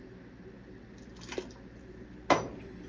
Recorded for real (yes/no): yes